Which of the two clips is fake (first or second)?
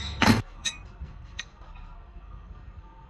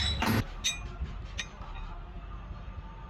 first